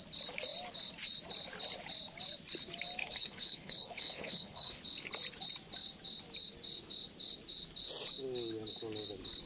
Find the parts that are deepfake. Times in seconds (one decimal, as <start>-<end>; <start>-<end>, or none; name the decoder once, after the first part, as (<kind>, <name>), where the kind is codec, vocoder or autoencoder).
3.0-4.8 (codec, HILCodec)

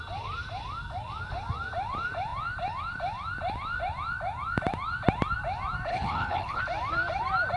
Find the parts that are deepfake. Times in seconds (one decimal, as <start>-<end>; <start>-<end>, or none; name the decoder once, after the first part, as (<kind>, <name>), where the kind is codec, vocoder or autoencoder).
5.9-6.6 (codec, HILCodec)

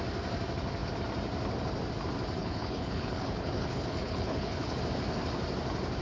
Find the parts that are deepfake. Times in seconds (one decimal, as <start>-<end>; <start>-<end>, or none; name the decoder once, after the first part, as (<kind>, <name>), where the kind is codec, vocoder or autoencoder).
2.4-4.8 (codec, HILCodec)

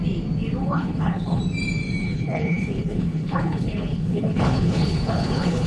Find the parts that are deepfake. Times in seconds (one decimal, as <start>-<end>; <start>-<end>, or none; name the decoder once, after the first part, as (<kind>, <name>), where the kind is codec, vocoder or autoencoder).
0.6-1.4 (codec, HILCodec); 2.0-5.7

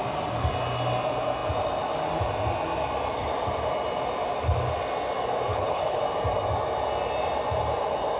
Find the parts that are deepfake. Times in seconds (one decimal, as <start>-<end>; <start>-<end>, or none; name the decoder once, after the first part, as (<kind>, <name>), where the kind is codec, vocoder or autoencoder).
5.5-6.0 (codec, HILCodec)

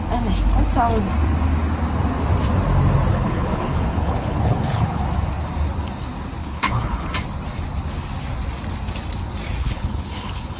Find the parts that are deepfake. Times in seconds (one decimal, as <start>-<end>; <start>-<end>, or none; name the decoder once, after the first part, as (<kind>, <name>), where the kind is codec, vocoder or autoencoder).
3.1-5.0 (codec, HILCodec); 6.4-7.1; 9.6-10.6

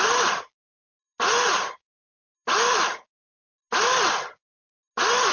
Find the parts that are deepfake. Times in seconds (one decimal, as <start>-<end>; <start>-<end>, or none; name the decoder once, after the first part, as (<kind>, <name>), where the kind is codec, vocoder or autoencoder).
none

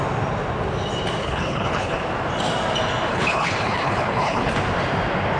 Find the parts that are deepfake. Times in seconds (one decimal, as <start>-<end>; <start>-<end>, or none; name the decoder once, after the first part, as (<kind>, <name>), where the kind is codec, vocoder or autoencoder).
1.2-2.0 (codec, HILCodec); 3.1-4.5